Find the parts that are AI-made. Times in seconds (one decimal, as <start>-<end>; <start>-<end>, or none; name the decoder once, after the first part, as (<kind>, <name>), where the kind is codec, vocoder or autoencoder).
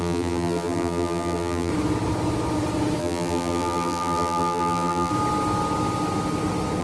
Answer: 0.0-1.7 (vocoder, BigVGAN v2); 3.0-5.1